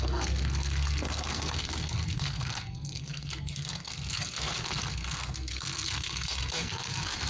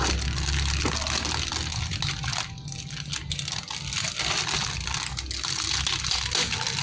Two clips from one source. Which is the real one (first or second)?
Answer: second